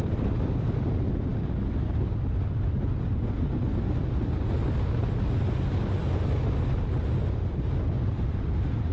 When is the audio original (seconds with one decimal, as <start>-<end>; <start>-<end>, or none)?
0.0-8.9